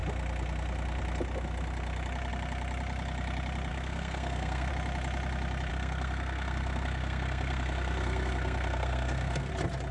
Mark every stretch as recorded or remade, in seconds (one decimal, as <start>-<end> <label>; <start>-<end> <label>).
0.0-3.7 recorded; 3.7-4.7 remade; 4.7-5.7 recorded; 5.7-9.5 remade; 9.5-9.9 recorded